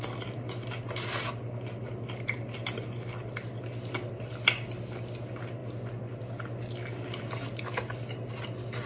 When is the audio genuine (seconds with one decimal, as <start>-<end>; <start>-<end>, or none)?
0.0-8.9

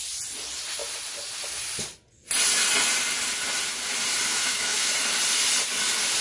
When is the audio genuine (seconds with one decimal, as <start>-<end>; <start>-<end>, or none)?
0.0-4.3; 4.9-6.2

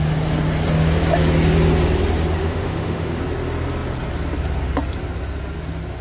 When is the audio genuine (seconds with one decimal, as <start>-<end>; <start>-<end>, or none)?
0.0-2.4; 3.2-6.0

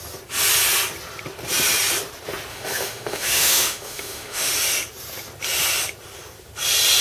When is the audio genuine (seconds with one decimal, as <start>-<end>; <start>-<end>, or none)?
0.0-2.5; 4.5-7.0

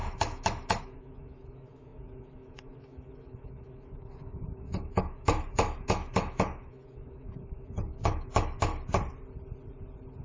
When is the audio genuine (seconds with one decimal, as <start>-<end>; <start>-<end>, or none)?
8.7-10.2

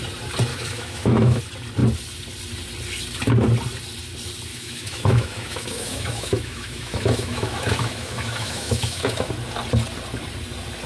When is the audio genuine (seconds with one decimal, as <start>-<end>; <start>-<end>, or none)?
0.0-0.5; 1.4-4.5; 9.3-10.9

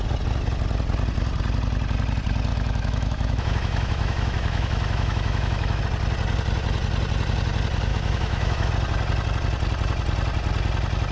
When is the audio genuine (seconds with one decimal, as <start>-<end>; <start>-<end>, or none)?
0.0-2.5; 5.8-7.9; 8.7-11.1

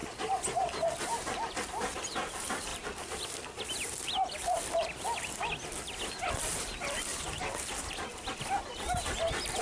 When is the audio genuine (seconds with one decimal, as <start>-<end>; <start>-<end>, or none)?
0.0-9.6